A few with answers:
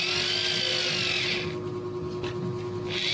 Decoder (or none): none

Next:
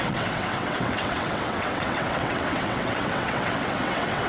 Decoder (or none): vocoder, WaveNeXt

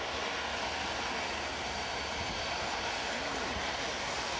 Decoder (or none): none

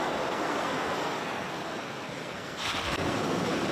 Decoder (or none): codec, SNAC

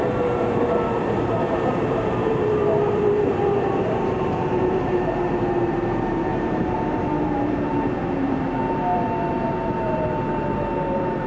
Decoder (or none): vocoder, BigVGAN v2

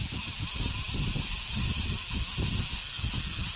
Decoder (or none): none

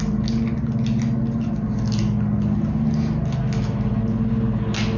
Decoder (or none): none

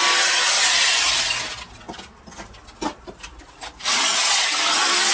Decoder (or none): none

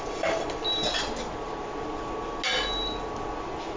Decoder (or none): none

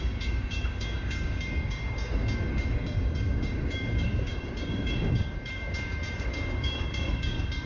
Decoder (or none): codec, DAC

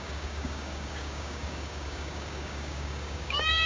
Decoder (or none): codec, DAC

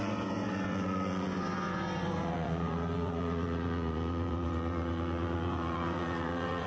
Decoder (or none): vocoder, Vocos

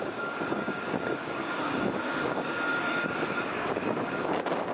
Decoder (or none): codec, DAC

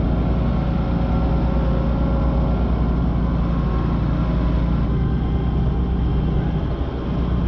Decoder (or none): none